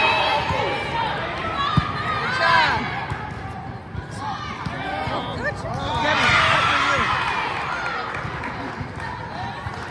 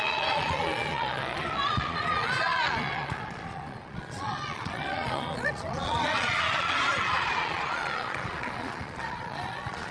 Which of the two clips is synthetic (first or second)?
second